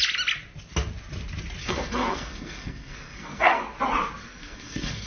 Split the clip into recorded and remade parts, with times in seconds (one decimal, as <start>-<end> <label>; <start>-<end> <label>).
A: 0.0-1.6 recorded; 1.6-3.6 remade; 3.6-4.2 recorded; 4.2-5.1 remade